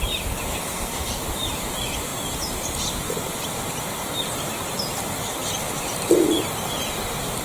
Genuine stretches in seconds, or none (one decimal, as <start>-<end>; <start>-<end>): 0.0-0.5; 1.1-7.4